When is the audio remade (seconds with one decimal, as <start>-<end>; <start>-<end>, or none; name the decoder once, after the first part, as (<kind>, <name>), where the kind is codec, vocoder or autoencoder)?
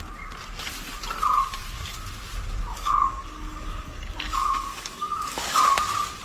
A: 2.7-5.6 (codec, DAC)